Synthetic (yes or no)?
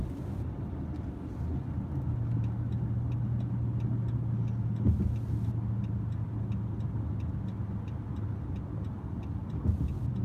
no